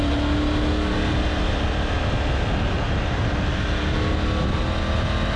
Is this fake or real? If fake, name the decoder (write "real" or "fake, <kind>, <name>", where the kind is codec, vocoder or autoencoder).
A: real